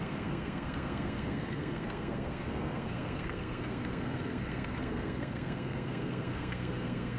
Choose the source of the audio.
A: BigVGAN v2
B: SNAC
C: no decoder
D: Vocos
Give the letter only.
B